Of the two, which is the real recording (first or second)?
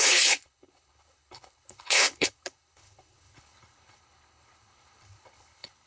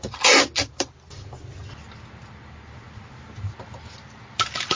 second